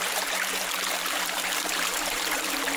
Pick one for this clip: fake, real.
fake